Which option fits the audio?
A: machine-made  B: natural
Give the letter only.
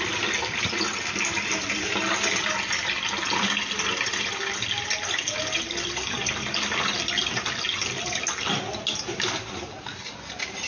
B